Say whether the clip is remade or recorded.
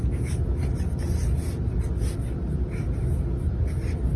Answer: recorded